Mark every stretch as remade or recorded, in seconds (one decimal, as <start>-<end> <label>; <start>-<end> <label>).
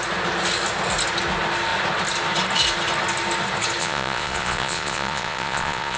0.0-3.8 recorded; 3.8-6.0 remade